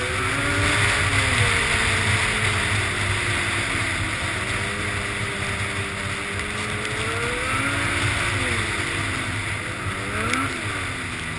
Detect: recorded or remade recorded